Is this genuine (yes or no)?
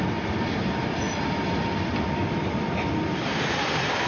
no